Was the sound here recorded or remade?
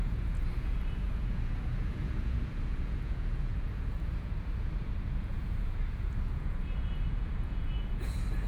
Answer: remade